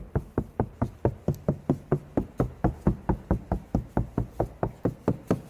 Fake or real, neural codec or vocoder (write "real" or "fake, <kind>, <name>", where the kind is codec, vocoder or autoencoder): real